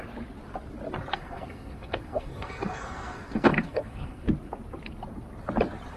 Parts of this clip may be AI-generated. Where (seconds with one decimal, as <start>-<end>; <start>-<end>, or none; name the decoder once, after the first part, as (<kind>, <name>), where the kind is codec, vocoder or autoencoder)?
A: 1.1-4.3 (codec, SNAC)